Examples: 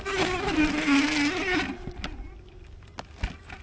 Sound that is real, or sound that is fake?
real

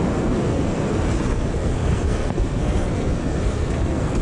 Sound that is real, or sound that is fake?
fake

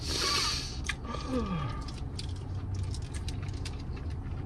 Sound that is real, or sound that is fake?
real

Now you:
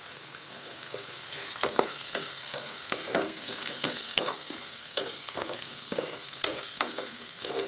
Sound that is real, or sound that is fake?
fake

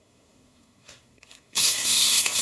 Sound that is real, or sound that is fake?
fake